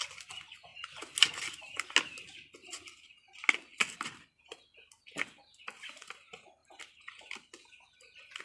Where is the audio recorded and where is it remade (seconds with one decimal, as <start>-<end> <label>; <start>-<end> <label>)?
0.0-8.4 recorded